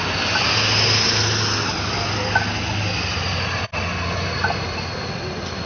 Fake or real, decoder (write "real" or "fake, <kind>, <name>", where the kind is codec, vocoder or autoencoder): real